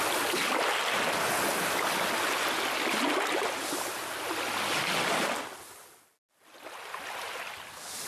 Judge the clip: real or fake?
real